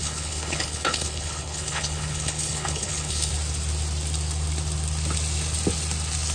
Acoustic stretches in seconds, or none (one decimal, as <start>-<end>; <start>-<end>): 3.3-6.3